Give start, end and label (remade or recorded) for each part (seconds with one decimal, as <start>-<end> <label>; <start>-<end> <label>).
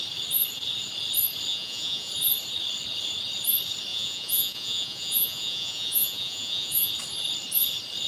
0.0-1.5 recorded; 1.5-2.1 remade; 2.1-3.9 recorded; 3.9-6.9 remade; 6.9-8.1 recorded